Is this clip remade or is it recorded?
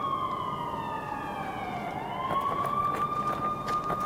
recorded